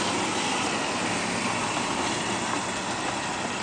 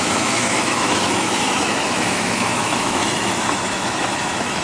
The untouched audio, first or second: first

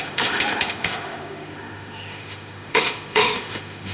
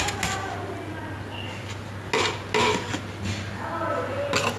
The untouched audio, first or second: second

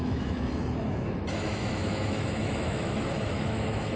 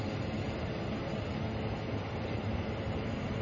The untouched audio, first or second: second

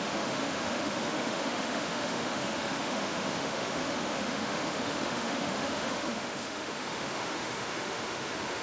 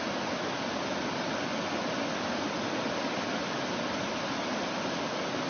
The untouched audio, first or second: second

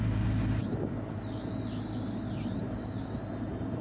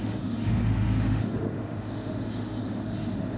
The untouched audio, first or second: first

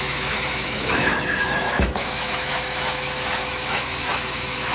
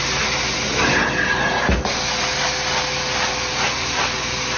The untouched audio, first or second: second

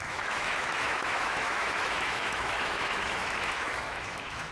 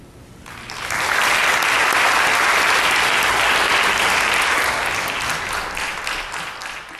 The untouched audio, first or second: second